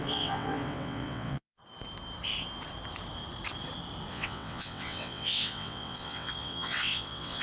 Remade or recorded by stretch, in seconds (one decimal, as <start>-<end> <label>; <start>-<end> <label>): 0.0-1.6 remade; 1.6-4.1 recorded; 4.1-7.4 remade